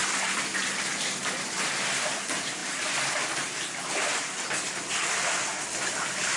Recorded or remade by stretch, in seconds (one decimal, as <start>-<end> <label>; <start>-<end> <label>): 0.0-6.4 recorded